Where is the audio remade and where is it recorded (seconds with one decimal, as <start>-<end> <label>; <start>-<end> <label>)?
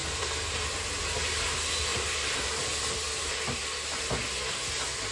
0.0-1.0 remade; 1.0-1.9 recorded; 1.9-2.9 remade; 2.9-5.1 recorded